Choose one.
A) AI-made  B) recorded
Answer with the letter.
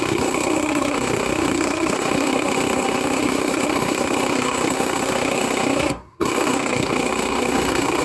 A